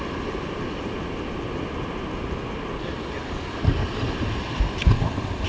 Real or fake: real